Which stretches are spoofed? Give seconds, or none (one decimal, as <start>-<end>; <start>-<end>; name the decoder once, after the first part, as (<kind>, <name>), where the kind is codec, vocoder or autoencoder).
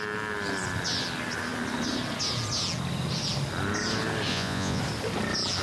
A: 4.3-4.8 (vocoder, Vocos)